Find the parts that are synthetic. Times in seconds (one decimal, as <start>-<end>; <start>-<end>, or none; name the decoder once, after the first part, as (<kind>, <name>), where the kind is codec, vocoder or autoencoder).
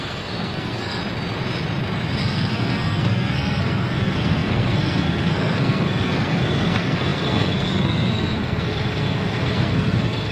0.0-1.0 (codec, SNAC); 2.2-10.3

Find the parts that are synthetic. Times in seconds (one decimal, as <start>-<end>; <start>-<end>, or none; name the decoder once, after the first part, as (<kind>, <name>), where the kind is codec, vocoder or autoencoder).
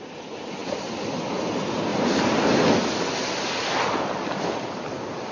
none